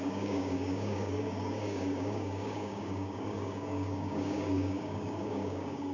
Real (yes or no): no